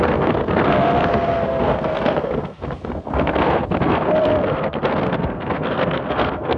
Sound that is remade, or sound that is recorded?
remade